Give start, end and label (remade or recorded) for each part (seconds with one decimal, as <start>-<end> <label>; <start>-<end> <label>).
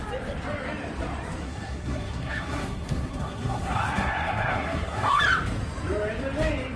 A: 0.0-1.4 recorded; 1.4-5.2 remade; 5.2-6.8 recorded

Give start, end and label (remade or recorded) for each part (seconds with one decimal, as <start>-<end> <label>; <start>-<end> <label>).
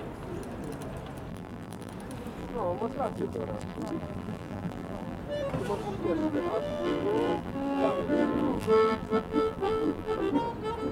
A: 0.0-1.3 recorded; 1.3-1.9 remade; 1.9-2.4 recorded; 2.4-5.2 remade; 5.2-6.2 recorded; 6.2-10.3 remade; 10.3-10.9 recorded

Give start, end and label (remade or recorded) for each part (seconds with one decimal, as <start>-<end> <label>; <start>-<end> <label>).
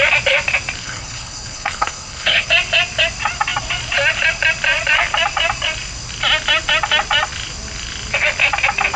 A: 0.0-0.8 recorded; 0.8-2.5 remade; 2.5-9.0 recorded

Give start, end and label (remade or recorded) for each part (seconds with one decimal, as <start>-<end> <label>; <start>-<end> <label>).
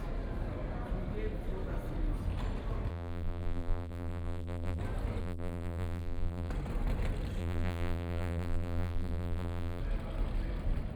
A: 0.0-2.9 recorded; 2.9-4.8 remade; 4.8-5.2 recorded; 5.2-6.5 remade; 6.5-7.4 recorded; 7.4-9.8 remade; 9.8-11.0 recorded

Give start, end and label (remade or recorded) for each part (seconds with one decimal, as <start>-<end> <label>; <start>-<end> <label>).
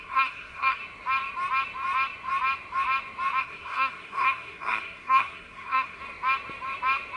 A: 0.0-0.8 remade; 0.8-3.4 recorded; 3.4-6.0 remade; 6.0-7.2 recorded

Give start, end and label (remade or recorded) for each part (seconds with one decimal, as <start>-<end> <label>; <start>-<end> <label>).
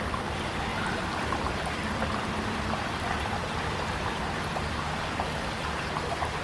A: 0.0-0.7 recorded; 0.7-4.5 remade; 4.5-6.4 recorded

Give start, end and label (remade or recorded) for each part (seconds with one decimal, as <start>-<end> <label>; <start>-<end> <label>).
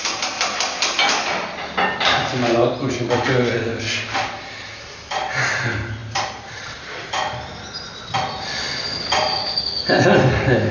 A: 0.0-6.0 recorded; 6.0-7.2 remade; 7.2-10.7 recorded